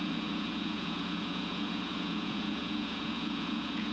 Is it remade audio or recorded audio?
remade